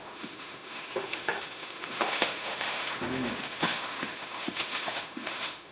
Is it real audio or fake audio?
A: fake